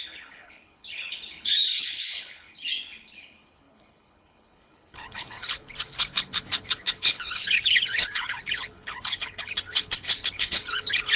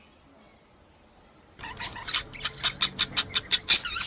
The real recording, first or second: second